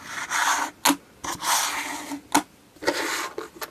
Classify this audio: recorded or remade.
recorded